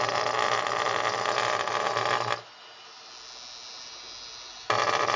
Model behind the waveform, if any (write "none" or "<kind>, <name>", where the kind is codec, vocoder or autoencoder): none